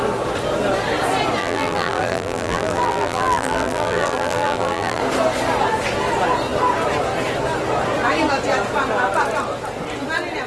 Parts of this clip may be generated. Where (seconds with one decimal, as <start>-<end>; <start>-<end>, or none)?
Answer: 1.4-5.0